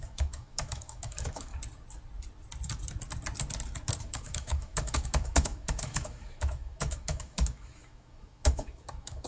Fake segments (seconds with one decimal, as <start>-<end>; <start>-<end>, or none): 0.0-1.5; 4.0-9.3